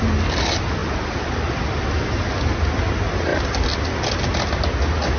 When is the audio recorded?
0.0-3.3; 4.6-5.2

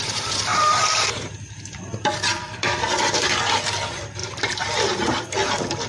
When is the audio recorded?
0.0-0.5; 2.9-4.2; 5.2-5.9

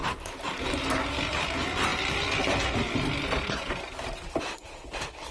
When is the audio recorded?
0.9-5.3

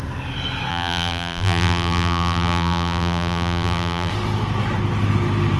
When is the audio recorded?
0.0-0.7; 4.1-5.6

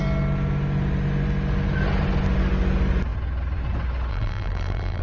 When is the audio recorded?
0.0-4.1

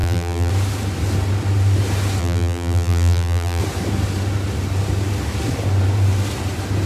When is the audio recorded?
0.5-2.2; 3.6-6.9

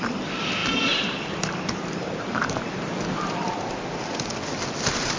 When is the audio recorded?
0.0-0.6; 3.7-5.2